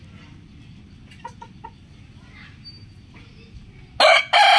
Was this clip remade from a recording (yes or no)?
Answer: no